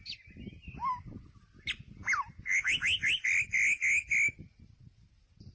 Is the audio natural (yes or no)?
yes